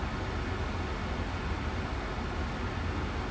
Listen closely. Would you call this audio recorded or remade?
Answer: recorded